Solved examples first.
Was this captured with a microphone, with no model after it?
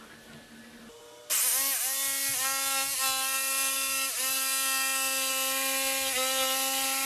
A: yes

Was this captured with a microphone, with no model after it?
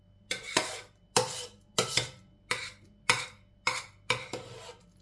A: yes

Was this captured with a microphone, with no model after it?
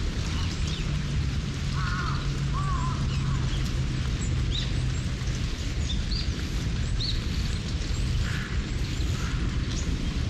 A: yes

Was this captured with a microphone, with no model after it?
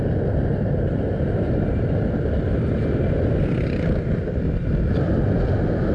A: yes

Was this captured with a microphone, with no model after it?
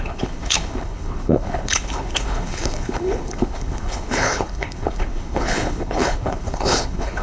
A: no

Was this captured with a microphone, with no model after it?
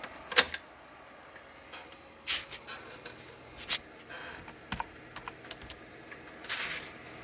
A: yes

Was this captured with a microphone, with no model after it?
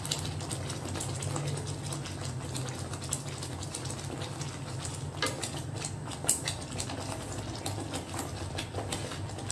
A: yes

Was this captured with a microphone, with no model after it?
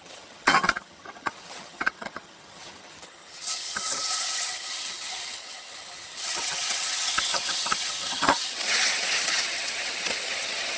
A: no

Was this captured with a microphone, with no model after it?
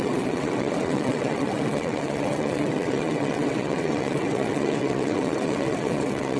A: no